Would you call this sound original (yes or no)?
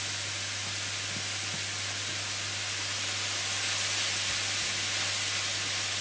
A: yes